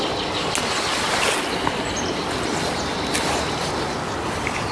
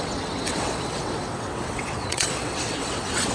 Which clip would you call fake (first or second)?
second